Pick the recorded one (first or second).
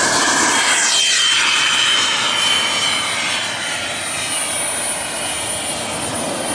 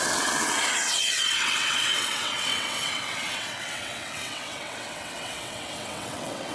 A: first